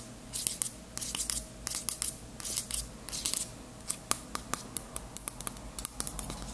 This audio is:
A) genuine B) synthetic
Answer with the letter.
A